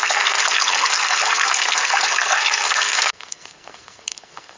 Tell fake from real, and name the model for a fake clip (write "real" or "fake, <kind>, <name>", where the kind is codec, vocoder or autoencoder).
fake, codec, SNAC